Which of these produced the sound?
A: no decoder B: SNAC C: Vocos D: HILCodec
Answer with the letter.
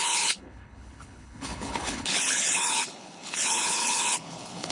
D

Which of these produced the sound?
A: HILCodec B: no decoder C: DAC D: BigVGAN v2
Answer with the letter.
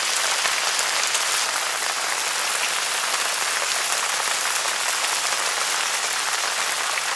B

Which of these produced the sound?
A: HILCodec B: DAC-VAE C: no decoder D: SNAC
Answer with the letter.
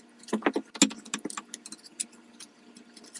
C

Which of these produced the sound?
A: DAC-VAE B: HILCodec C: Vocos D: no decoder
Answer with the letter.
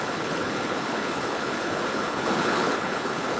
B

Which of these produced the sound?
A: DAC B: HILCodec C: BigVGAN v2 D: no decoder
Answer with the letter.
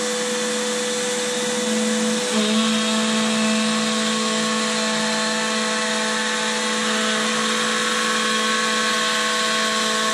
D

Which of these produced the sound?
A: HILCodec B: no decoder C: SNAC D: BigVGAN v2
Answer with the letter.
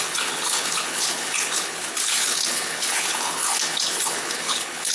A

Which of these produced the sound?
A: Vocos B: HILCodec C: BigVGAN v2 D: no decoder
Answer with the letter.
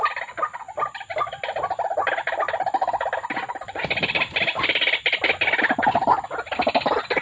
D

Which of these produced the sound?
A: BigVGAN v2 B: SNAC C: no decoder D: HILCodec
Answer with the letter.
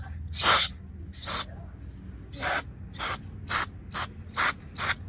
C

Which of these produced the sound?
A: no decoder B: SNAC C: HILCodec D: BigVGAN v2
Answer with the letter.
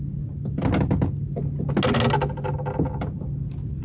A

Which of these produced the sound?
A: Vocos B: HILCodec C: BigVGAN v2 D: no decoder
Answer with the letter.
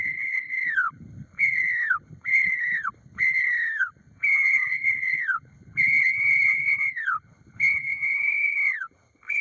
B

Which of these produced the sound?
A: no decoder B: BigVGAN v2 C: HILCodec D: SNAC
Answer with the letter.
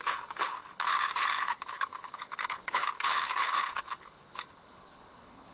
C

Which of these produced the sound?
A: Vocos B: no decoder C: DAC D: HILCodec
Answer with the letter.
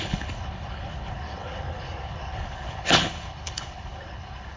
D